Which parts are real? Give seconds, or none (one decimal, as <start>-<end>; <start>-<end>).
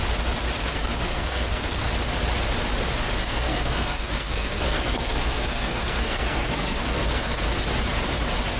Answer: 0.0-0.6; 1.9-3.2; 7.4-8.6